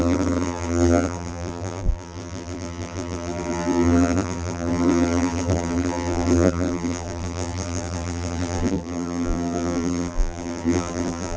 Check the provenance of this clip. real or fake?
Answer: fake